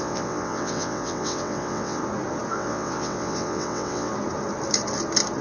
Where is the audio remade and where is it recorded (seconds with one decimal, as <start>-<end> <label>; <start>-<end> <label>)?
0.0-2.0 remade; 2.0-2.5 recorded; 2.5-4.1 remade; 4.1-5.4 recorded